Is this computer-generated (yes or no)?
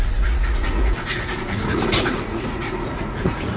yes